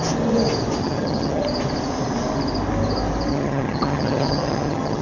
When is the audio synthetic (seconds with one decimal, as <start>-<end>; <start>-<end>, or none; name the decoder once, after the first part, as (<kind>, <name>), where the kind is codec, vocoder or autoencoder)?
0.8-1.4 (vocoder, HiFi-GAN); 3.3-5.0